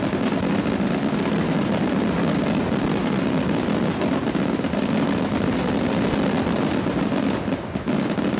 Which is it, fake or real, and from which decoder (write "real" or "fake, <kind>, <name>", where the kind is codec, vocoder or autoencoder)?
real